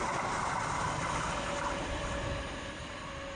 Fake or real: real